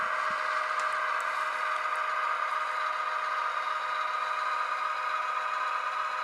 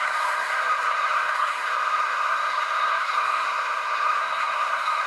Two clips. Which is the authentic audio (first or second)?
first